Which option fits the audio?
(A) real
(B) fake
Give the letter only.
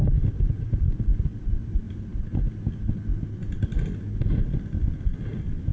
A